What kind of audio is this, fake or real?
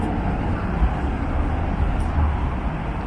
real